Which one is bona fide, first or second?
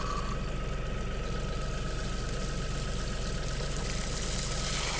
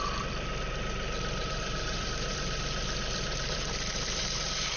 first